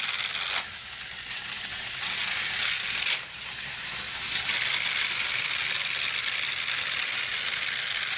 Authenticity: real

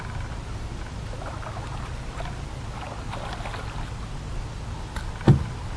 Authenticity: real